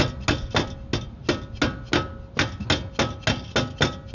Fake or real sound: real